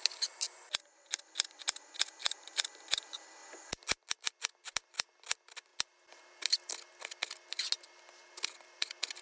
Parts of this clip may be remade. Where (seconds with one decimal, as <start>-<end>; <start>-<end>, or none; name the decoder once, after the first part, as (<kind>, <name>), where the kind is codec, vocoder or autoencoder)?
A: 2.2-2.9 (vocoder, BigVGAN v2)